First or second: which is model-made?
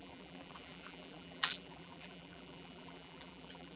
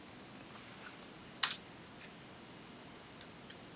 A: first